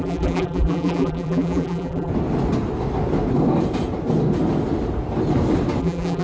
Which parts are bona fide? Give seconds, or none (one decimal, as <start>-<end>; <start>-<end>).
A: 2.1-5.8